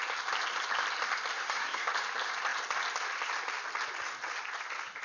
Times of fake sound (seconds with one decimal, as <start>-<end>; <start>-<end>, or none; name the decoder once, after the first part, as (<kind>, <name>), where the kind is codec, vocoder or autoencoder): 1.3-1.9 (codec, SNAC)